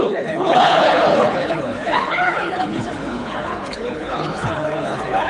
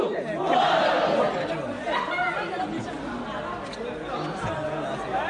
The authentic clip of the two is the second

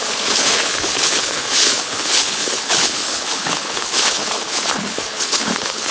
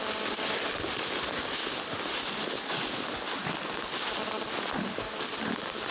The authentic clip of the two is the second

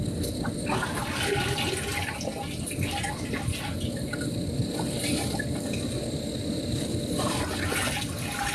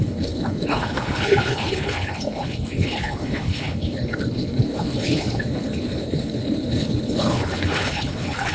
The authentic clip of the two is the first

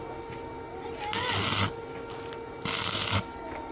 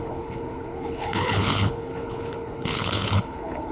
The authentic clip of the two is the first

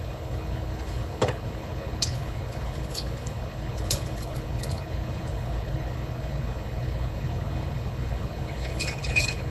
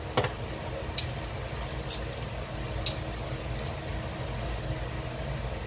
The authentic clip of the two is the second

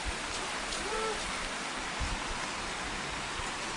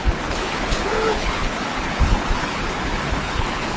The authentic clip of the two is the first